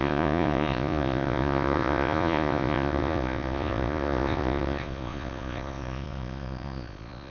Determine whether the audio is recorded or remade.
remade